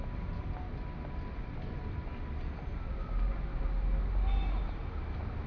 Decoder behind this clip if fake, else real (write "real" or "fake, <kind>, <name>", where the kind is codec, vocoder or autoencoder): real